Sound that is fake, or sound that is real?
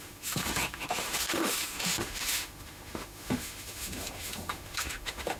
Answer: fake